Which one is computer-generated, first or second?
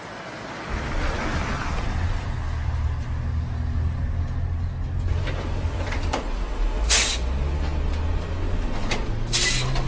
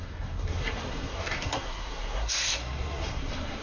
second